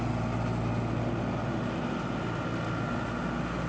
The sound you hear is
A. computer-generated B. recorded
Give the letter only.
B